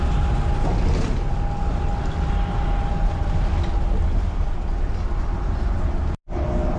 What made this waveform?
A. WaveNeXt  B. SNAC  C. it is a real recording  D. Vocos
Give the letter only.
C